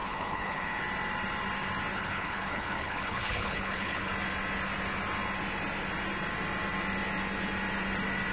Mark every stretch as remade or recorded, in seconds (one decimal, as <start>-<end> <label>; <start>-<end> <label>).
0.0-0.8 remade; 0.8-1.9 recorded; 1.9-4.1 remade; 4.1-8.3 recorded